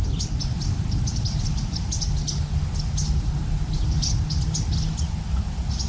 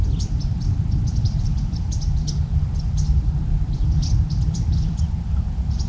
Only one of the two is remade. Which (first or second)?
second